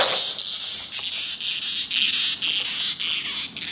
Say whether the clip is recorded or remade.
recorded